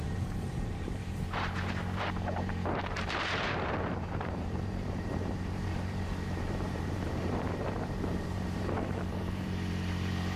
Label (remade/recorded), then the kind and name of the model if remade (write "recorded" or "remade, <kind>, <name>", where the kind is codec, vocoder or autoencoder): remade, vocoder, BigVGAN v2